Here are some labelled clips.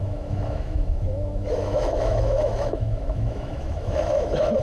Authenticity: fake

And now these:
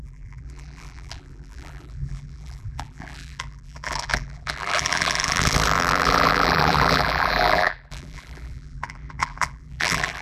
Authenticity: fake